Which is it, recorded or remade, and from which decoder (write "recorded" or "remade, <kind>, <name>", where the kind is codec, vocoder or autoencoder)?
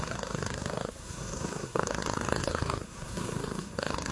remade, codec, SNAC